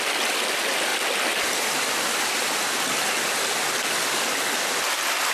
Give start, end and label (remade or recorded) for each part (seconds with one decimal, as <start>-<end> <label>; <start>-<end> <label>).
0.0-5.3 recorded